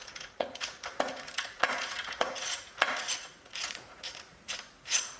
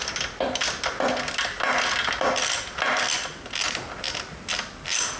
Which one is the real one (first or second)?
second